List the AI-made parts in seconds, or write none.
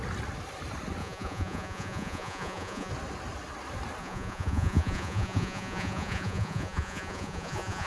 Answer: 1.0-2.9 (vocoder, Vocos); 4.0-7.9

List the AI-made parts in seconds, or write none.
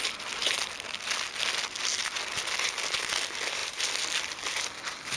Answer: 3.6-4.4 (vocoder, BigVGAN v2)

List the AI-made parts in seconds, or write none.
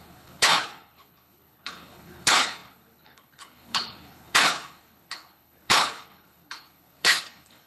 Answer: 0.0-7.7 (codec, HILCodec)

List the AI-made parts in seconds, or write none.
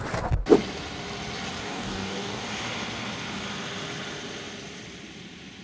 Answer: 1.6-2.4 (codec, DAC)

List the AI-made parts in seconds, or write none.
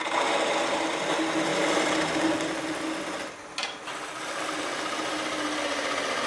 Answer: none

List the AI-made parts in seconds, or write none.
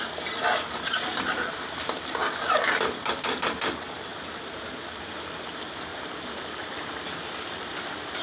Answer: 4.1-4.9 (vocoder, BigVGAN v2); 5.9-6.6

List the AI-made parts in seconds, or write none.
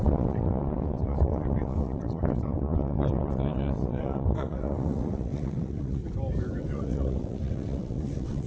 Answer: 0.0-6.0 (vocoder, WaveNeXt); 6.6-8.5